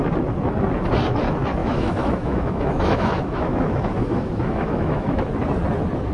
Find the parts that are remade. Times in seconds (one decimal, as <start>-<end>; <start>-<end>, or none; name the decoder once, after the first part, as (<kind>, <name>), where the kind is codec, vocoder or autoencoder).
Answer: 1.6-5.3 (autoencoder, DAC-VAE)